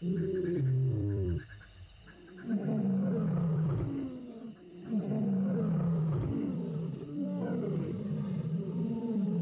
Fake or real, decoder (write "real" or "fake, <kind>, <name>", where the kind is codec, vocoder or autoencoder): fake, vocoder, BigVGAN v2